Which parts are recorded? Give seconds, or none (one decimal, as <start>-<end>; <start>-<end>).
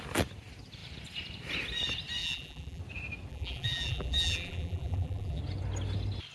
0.0-2.2; 2.8-3.3; 5.4-6.3